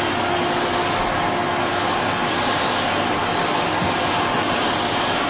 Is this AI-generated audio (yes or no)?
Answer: no